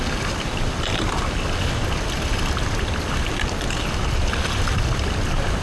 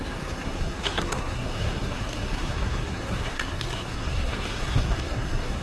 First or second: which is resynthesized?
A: second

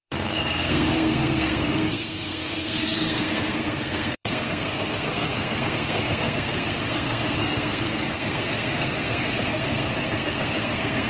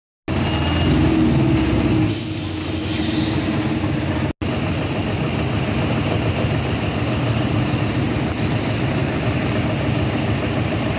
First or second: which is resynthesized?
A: first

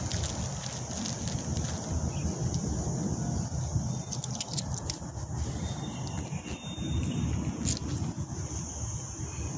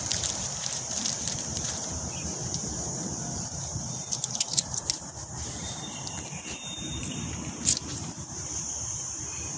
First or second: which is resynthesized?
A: second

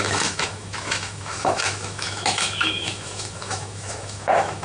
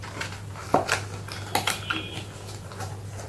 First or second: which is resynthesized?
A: first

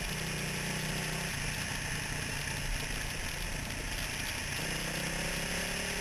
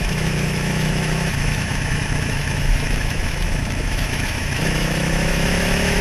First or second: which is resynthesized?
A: second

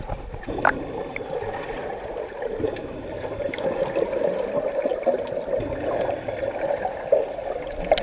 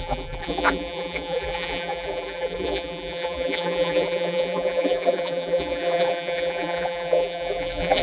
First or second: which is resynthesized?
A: second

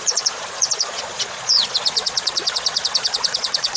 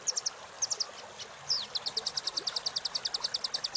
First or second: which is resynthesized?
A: first